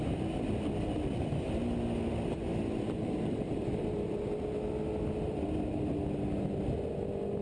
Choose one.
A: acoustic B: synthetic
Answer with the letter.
A